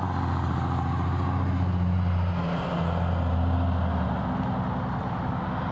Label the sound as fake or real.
real